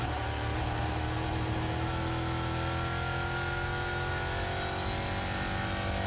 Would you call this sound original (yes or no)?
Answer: yes